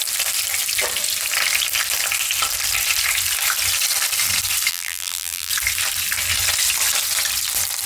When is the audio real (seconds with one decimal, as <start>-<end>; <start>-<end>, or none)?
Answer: 0.0-4.7; 5.5-7.9